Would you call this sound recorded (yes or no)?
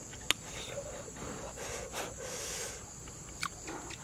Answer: yes